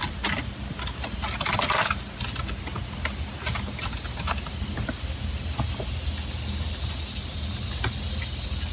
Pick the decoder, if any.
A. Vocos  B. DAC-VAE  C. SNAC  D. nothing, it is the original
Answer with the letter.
D